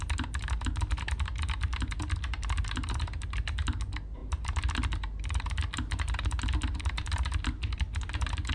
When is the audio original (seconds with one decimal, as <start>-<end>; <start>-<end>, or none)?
0.0-8.5